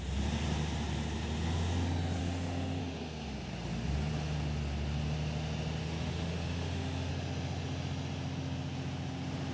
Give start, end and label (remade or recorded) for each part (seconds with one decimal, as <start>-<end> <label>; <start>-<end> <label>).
0.0-2.2 recorded; 2.2-2.8 remade; 2.8-5.8 recorded; 5.8-7.1 remade; 7.1-9.5 recorded